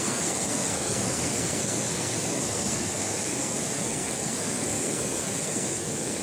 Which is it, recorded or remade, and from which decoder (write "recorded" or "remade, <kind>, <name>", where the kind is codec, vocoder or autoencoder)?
remade, codec, SNAC